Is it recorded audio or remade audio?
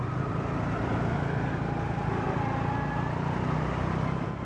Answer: recorded